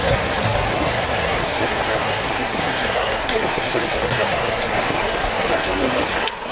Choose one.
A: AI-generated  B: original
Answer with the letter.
A